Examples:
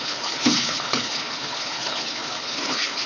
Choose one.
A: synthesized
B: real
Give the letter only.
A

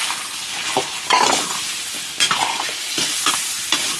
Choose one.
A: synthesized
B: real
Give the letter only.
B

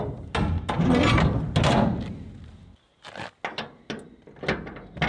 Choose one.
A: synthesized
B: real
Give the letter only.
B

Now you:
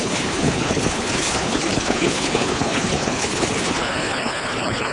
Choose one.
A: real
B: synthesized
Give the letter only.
B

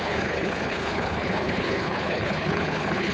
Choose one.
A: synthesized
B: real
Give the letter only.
A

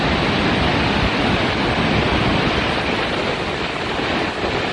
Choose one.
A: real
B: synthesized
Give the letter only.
A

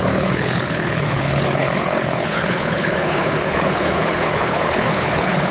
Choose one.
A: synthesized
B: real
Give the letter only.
A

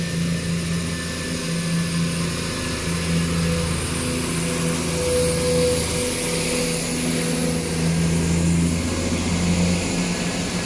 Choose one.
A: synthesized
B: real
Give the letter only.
B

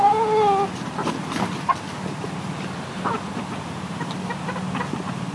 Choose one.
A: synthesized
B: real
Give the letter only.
B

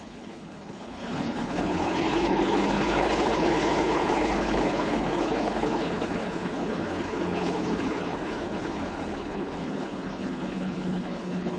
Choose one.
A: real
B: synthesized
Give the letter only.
B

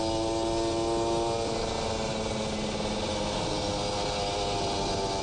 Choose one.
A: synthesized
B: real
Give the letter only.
B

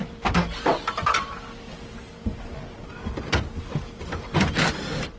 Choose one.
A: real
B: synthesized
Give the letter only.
A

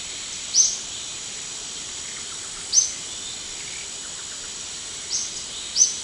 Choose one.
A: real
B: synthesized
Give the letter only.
A